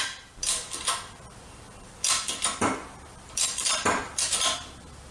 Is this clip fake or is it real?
fake